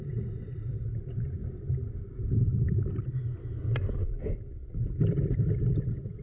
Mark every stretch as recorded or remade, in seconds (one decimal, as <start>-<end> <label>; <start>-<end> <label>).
0.0-6.2 recorded